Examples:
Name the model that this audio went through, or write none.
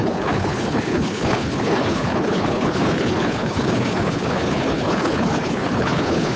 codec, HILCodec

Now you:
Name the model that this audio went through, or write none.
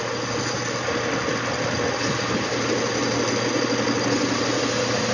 none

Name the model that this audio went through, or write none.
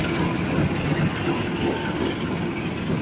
none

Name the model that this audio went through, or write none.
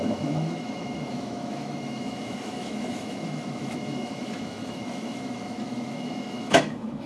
autoencoder, DAC-VAE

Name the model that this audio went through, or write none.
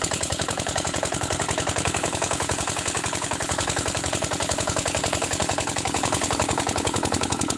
codec, HILCodec